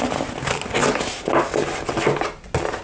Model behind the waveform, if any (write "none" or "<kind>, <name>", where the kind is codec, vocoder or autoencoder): none